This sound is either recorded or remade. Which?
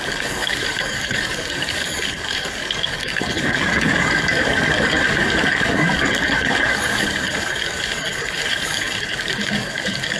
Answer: remade